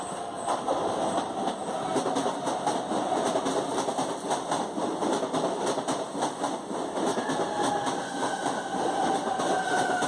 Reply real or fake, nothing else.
real